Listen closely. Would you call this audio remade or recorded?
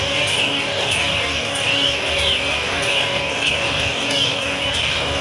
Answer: remade